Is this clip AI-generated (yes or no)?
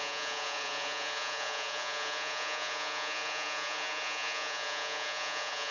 yes